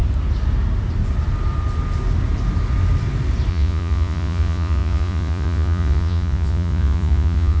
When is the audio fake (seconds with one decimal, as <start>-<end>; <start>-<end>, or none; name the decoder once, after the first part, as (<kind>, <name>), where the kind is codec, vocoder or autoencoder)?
3.5-7.6 (vocoder, Vocos)